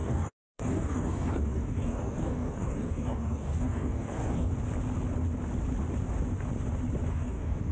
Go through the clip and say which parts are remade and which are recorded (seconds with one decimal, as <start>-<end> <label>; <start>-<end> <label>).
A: 0.0-4.5 remade; 4.5-7.1 recorded; 7.1-7.7 remade